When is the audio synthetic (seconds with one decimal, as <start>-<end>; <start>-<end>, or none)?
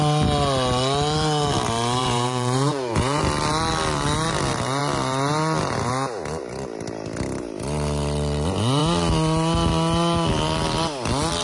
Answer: 2.0-3.2